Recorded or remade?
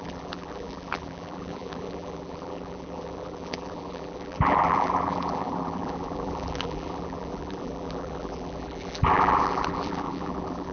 remade